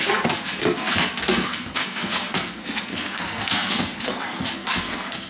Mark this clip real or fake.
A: fake